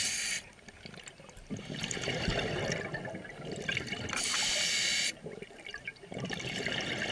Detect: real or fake real